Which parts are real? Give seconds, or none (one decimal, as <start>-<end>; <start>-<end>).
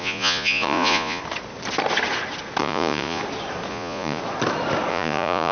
1.2-2.6; 3.2-3.7; 4.2-4.9